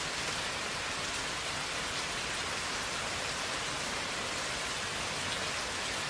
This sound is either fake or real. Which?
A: real